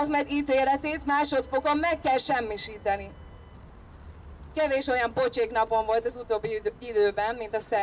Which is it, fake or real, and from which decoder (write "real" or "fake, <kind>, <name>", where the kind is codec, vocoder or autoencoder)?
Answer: real